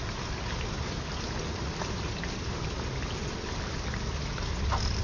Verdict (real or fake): real